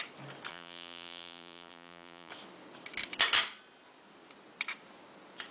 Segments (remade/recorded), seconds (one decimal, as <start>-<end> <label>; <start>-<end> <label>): 0.0-0.5 recorded; 0.5-2.3 remade; 2.3-5.5 recorded